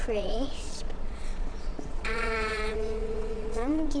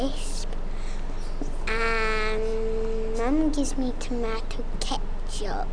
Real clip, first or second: second